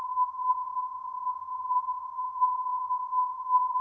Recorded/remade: remade